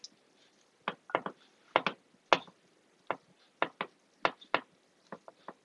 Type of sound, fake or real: real